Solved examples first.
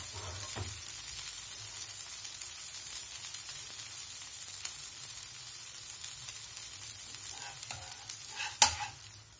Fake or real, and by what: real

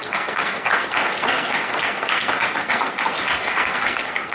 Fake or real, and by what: fake, codec, SNAC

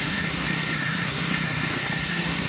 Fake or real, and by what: fake, codec, SNAC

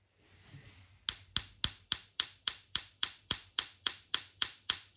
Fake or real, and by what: real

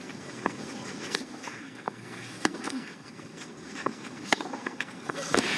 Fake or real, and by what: fake, codec, SNAC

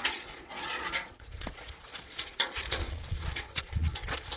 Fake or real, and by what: fake, vocoder, Vocos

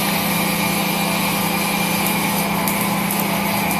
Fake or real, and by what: real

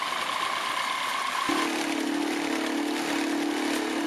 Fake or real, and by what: real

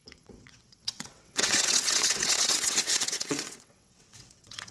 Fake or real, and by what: fake, vocoder, WaveNeXt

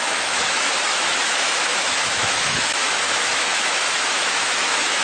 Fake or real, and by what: fake, autoencoder, DAC-VAE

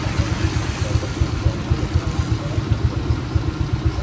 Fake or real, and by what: real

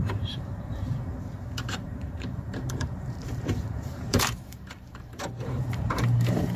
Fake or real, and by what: fake, vocoder, BigVGAN v2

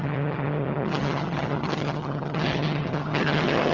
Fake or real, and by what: fake, vocoder, HiFi-GAN